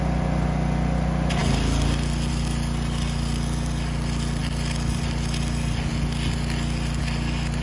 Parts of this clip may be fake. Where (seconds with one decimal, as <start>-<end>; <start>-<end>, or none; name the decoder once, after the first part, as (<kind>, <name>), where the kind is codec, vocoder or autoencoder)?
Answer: none